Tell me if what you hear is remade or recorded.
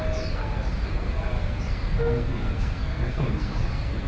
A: remade